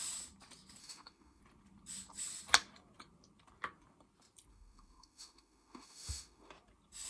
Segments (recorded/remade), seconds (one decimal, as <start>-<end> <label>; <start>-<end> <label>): 0.0-0.8 recorded; 0.8-1.4 remade; 1.4-4.5 recorded; 4.5-6.5 remade; 6.5-7.1 recorded